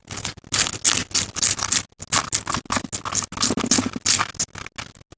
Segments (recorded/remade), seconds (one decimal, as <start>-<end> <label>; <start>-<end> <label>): 0.0-5.2 recorded